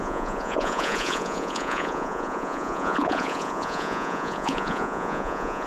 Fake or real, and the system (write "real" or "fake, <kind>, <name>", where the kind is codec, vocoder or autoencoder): fake, vocoder, Vocos